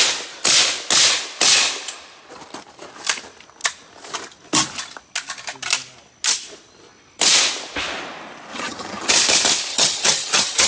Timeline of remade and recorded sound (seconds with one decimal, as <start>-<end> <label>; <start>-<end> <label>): 0.0-8.5 recorded; 8.5-9.1 remade; 9.1-9.7 recorded; 9.7-10.7 remade